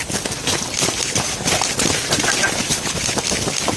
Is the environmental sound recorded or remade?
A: recorded